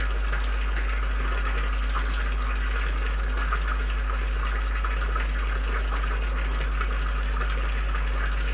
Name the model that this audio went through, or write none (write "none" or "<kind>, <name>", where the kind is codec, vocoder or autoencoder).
none